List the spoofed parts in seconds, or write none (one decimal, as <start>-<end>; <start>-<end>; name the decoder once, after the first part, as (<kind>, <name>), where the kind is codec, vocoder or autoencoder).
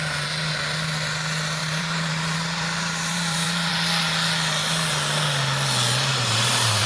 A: 1.6-3.7 (vocoder, BigVGAN v2); 6.1-6.9